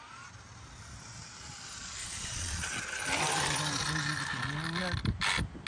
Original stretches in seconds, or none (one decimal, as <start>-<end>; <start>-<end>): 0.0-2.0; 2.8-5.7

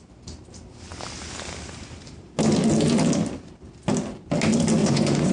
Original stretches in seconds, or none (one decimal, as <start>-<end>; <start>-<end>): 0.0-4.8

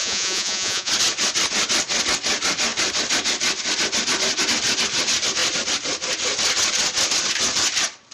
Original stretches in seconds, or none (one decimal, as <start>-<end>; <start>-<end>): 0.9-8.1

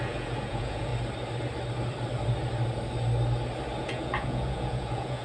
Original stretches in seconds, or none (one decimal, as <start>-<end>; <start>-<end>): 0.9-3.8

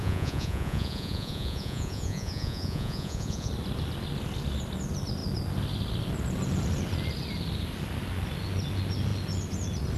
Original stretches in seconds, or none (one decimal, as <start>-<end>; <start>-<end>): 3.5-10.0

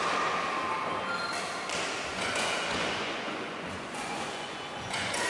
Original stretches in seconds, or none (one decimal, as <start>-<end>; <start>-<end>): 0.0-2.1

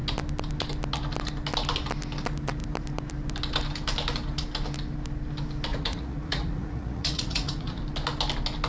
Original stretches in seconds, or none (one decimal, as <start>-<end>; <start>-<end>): 0.0-5.7; 7.8-8.7